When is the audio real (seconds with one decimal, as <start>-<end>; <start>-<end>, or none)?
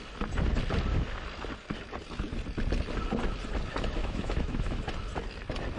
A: 0.0-4.0; 4.8-5.8